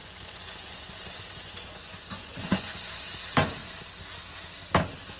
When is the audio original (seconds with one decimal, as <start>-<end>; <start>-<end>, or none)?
3.1-5.2